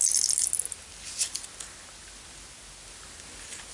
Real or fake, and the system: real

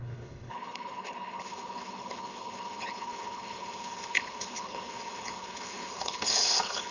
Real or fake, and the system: fake, codec, HILCodec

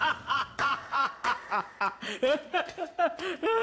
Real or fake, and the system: fake, vocoder, Vocos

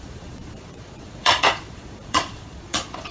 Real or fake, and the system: fake, vocoder, Vocos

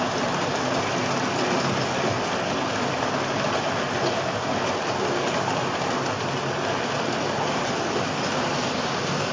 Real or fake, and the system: real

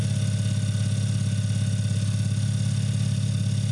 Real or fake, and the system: real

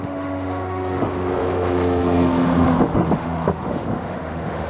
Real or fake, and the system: fake, autoencoder, DAC-VAE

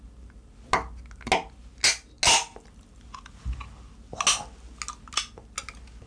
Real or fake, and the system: real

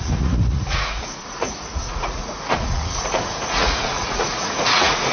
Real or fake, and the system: fake, vocoder, Vocos